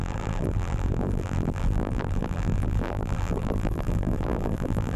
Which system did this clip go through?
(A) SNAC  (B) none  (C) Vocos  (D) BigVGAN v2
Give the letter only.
D